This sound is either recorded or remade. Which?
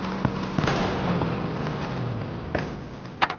recorded